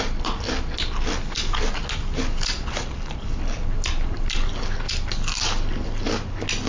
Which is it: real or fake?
real